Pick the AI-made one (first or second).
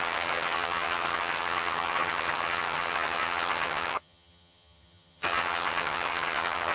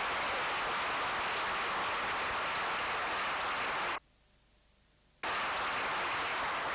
first